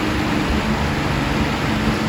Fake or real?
real